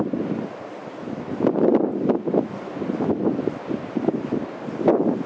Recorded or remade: recorded